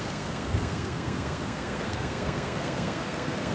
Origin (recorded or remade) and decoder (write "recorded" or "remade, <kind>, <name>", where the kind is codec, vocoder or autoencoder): remade, codec, SNAC